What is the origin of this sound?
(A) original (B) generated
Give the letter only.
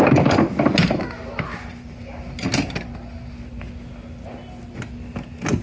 A